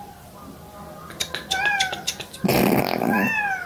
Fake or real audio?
real